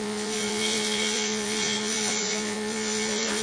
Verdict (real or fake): fake